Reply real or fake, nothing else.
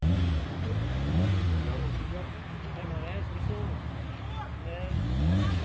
real